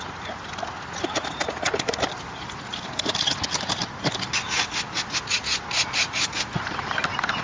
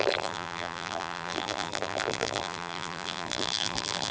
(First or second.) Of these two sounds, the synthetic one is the second